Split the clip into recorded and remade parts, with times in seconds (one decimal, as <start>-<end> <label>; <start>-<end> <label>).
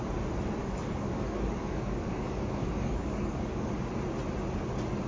0.0-0.6 recorded; 0.6-3.7 remade; 3.7-5.1 recorded